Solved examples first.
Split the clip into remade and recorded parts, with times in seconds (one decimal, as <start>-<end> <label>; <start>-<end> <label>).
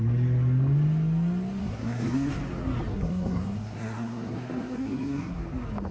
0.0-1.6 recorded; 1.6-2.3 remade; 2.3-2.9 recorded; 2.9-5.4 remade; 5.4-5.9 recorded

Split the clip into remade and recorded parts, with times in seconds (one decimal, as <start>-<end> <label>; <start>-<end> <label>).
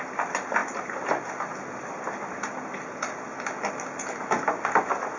0.0-5.2 recorded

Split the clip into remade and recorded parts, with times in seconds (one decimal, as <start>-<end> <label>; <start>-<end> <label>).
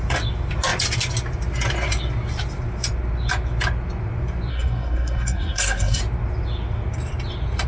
0.0-4.5 recorded; 4.5-6.0 remade; 6.0-7.7 recorded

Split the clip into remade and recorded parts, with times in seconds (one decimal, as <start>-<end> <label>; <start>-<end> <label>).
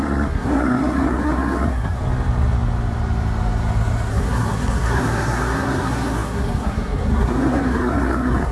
0.0-2.0 remade; 2.0-4.1 recorded; 4.1-8.5 remade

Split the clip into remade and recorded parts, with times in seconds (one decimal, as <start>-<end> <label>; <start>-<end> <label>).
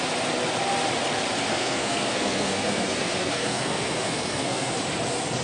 0.0-1.5 recorded; 1.5-4.7 remade; 4.7-5.4 recorded